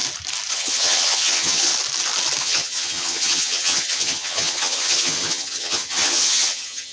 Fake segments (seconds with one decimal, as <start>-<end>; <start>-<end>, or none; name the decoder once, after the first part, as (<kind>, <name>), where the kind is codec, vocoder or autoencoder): 0.5-1.7 (vocoder, HiFi-GAN); 2.4-6.9